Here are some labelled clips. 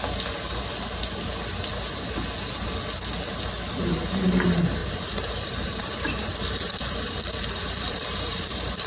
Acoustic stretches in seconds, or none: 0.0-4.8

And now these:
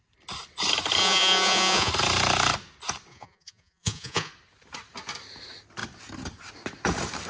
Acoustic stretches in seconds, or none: 0.0-1.0; 1.9-3.1; 4.3-7.3

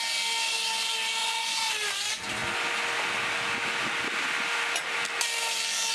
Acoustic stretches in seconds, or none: 0.0-1.2; 1.7-5.9

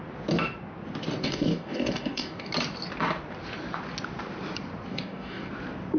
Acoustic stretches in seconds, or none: 0.0-1.2; 2.5-4.9; 5.5-6.0

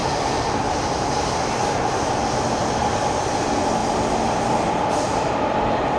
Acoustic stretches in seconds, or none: 2.5-3.8; 4.3-6.0

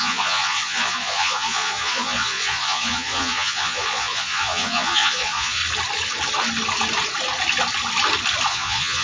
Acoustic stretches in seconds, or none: 5.6-8.5

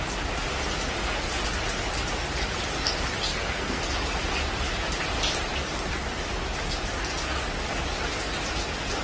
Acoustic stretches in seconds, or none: 0.0-3.3; 3.8-9.0